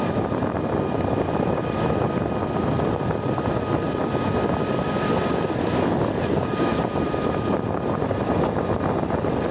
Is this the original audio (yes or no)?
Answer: yes